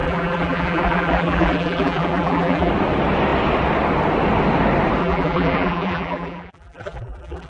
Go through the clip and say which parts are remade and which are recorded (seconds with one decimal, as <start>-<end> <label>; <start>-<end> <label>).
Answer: 0.0-2.7 remade; 2.7-5.0 recorded; 5.0-7.5 remade